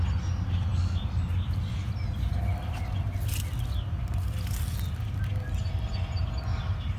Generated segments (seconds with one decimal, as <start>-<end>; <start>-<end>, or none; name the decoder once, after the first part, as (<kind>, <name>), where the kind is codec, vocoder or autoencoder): none